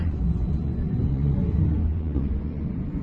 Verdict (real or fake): fake